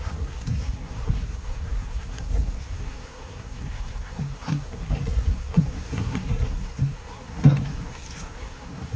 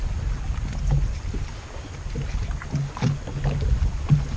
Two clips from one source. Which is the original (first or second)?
second